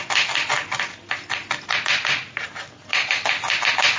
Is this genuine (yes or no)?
yes